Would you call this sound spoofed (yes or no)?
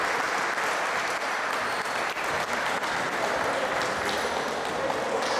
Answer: no